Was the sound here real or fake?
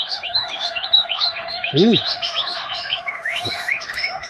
fake